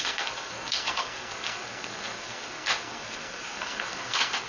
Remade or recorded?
remade